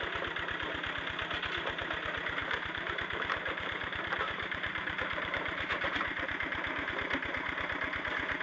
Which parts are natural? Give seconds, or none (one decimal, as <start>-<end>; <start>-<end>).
0.0-2.4; 6.9-8.4